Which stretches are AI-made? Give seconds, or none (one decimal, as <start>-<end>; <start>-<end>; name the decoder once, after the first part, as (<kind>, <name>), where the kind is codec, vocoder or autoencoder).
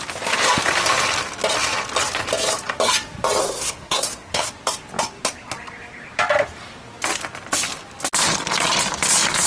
3.4-4.5 (codec, SNAC)